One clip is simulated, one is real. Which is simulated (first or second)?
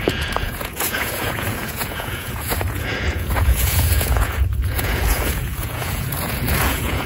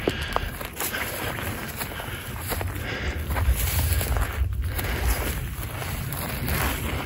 first